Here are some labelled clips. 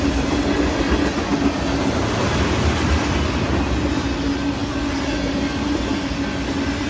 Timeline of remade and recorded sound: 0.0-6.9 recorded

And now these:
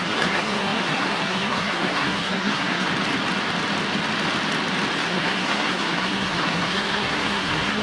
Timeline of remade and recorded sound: 0.0-2.9 remade; 2.9-5.0 recorded; 5.0-7.8 remade

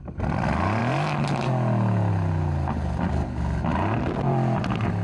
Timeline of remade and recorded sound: 0.0-5.0 recorded

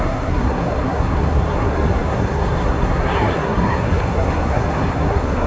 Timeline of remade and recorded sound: 0.0-5.5 remade